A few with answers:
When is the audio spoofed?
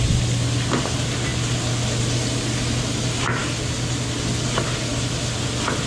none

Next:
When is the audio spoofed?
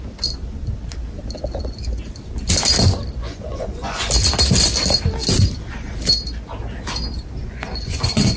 3.2-4.1 (vocoder, Vocos); 7.4-8.4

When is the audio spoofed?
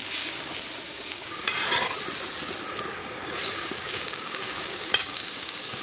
0.0-0.5 (codec, DAC); 0.9-1.5; 3.0-5.8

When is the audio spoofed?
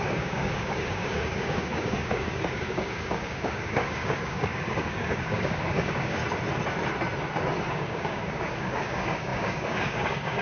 0.0-6.2 (codec, DAC); 7.7-10.4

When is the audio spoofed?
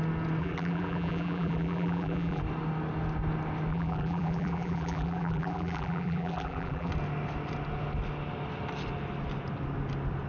0.4-2.4 (vocoder, BigVGAN v2); 3.7-6.9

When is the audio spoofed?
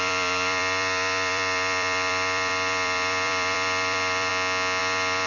0.0-4.3 (vocoder, BigVGAN v2); 4.8-5.3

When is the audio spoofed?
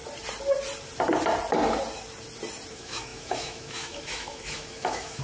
2.7-5.2 (autoencoder, DAC-VAE)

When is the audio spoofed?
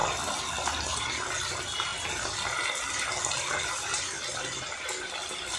none